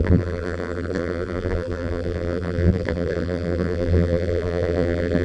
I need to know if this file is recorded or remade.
remade